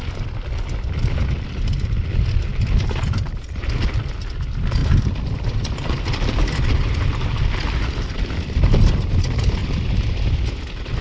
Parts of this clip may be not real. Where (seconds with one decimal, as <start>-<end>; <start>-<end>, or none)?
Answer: 4.8-9.2